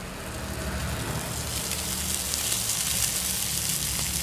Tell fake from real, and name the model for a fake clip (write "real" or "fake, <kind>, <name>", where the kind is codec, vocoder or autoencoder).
real